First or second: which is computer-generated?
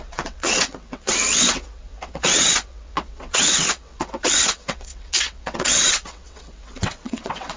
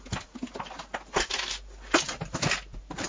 first